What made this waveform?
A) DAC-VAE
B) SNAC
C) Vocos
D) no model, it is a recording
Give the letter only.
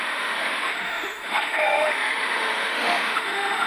A